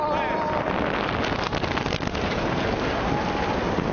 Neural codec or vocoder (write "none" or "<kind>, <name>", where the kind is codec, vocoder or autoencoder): none